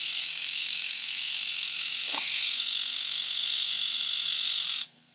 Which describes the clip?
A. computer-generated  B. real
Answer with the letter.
A